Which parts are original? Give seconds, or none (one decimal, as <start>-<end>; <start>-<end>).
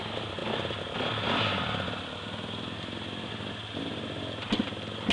0.0-5.1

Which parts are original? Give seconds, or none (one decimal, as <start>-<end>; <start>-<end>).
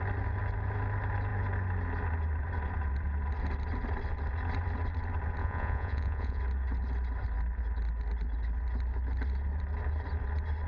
0.0-5.4; 6.4-10.7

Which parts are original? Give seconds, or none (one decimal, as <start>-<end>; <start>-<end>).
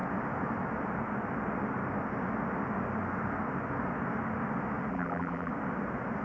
0.0-4.9; 5.5-6.2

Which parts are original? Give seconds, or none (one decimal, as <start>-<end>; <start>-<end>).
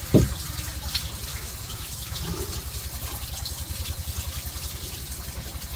0.0-1.3; 2.5-5.8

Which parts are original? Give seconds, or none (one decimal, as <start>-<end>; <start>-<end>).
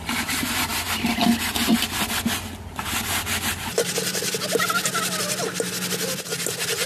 0.0-6.9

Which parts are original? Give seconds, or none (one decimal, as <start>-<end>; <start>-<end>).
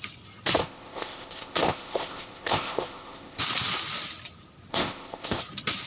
0.0-0.6; 3.4-4.7; 5.4-5.9